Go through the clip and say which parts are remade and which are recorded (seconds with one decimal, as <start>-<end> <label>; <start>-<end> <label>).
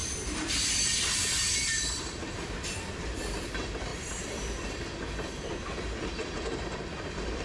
0.0-3.9 remade; 3.9-6.2 recorded; 6.2-7.4 remade